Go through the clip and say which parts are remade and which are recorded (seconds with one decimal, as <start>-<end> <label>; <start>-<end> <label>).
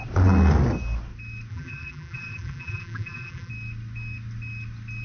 0.0-1.5 recorded; 1.5-3.5 remade; 3.5-5.0 recorded